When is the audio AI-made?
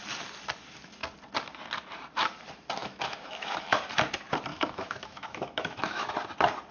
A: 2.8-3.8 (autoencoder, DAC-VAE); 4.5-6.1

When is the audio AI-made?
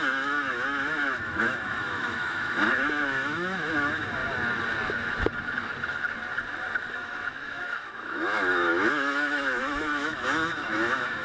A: 0.0-4.2 (autoencoder, DAC-VAE); 6.9-11.2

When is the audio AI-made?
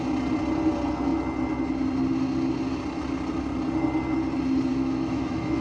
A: 4.7-5.6 (autoencoder, DAC-VAE)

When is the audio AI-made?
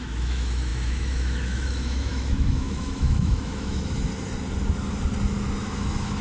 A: 0.0-4.1 (autoencoder, DAC-VAE); 5.6-6.2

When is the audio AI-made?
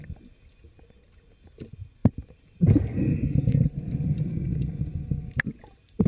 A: none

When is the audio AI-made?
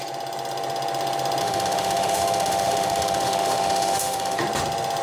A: 1.4-4.4 (autoencoder, DAC-VAE)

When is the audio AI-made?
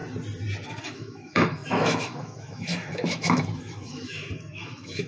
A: 0.8-5.1 (autoencoder, DAC-VAE)